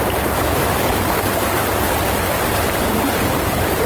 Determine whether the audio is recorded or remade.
remade